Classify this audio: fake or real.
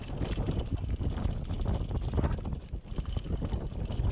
real